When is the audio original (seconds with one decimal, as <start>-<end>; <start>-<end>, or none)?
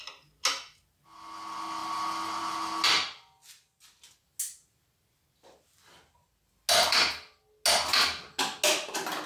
0.0-9.3